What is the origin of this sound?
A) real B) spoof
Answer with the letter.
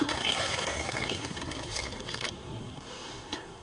B